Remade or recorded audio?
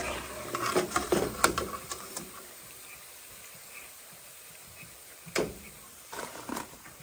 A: remade